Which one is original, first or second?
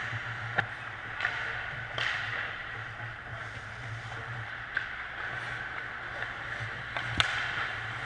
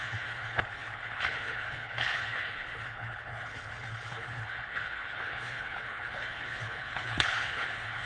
first